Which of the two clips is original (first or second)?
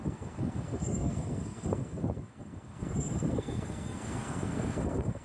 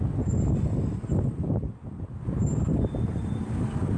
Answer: second